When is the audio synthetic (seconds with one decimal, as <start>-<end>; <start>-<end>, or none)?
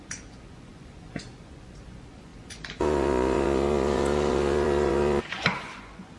0.0-6.2